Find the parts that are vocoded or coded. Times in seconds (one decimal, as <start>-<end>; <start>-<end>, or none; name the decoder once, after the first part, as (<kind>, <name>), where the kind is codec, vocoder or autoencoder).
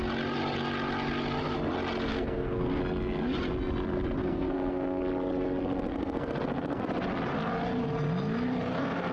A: 2.1-2.8 (codec, SNAC); 4.2-5.0; 5.9-6.8